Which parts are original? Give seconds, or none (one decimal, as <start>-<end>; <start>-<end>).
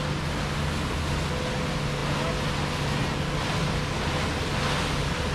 0.0-5.3